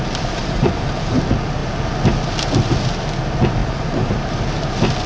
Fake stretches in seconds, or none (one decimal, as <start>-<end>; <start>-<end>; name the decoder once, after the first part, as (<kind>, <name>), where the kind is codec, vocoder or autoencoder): 0.4-1.2 (vocoder, BigVGAN v2); 3.6-4.1